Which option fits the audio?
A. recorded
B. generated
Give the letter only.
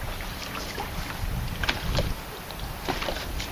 A